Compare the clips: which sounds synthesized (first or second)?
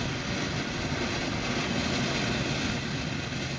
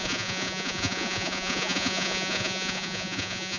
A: second